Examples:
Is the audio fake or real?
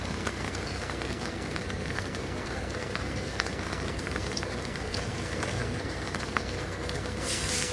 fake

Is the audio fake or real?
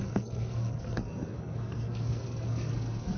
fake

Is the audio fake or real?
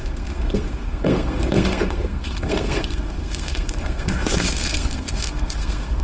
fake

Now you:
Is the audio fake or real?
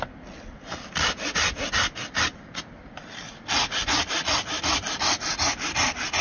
real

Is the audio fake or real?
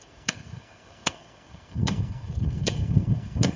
fake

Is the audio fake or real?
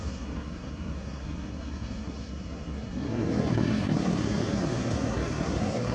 fake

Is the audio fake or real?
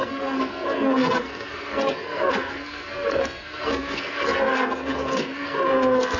fake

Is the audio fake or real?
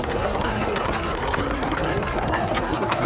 fake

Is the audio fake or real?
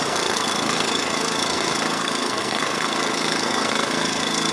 fake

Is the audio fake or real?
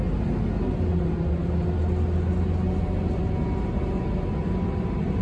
real